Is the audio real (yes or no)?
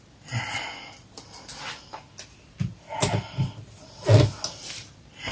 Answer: yes